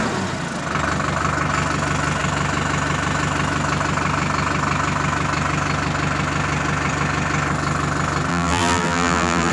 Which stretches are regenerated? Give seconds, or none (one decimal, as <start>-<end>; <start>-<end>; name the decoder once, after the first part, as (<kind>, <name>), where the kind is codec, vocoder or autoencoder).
8.3-9.5 (vocoder, BigVGAN v2)